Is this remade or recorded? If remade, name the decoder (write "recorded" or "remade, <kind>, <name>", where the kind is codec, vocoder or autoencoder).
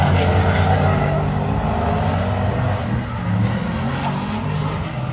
recorded